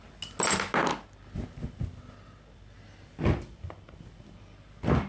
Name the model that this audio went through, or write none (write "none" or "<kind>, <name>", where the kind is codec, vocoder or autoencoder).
none